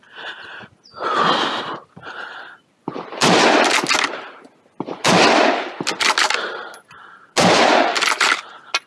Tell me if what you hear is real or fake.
real